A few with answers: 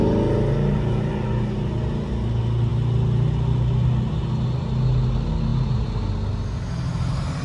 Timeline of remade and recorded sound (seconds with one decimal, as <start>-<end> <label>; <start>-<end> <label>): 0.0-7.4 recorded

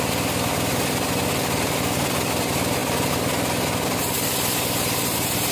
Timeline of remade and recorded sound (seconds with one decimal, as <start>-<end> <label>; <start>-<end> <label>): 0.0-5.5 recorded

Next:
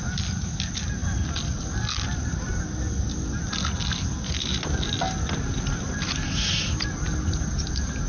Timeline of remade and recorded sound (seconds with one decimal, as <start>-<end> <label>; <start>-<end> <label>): 0.0-8.1 recorded

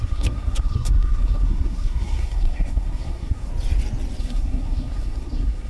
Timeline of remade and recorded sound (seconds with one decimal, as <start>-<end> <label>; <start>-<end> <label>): 0.0-3.5 remade; 3.5-4.2 recorded; 4.2-5.7 remade

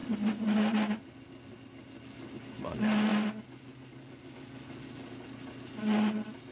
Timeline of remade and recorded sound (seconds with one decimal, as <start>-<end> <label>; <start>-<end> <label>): 0.0-6.5 recorded

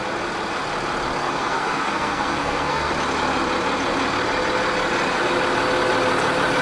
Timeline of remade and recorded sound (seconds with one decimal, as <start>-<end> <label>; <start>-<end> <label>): 0.0-1.2 recorded; 1.2-2.9 remade; 2.9-6.6 recorded

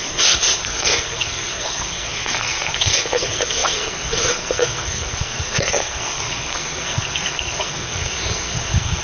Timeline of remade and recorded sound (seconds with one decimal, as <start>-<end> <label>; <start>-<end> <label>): 0.0-9.0 remade

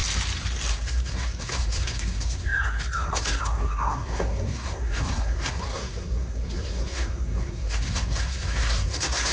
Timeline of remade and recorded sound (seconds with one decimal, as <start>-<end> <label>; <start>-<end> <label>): 0.0-0.7 recorded; 0.7-9.3 remade